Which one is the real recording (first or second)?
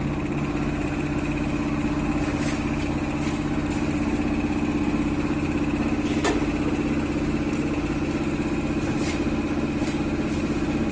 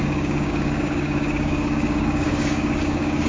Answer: first